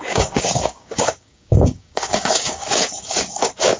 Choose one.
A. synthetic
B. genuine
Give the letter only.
A